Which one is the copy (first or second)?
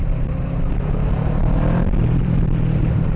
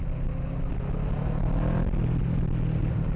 first